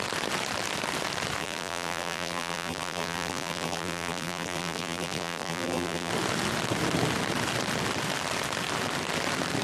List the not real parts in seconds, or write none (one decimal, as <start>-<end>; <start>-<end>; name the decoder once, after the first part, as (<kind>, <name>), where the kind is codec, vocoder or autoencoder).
1.4-6.1 (vocoder, BigVGAN v2)